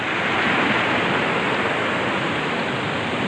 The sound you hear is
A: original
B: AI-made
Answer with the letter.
A